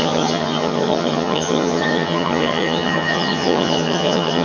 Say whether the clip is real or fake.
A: fake